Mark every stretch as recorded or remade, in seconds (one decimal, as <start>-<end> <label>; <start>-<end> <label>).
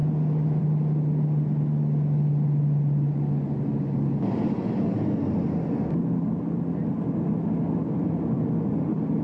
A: 0.0-9.2 recorded